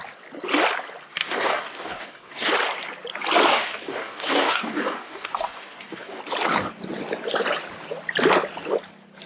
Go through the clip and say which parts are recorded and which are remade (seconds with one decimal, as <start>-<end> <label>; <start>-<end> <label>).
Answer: 0.0-1.2 recorded; 1.2-2.5 remade; 2.5-3.5 recorded; 3.5-6.2 remade; 6.2-9.3 recorded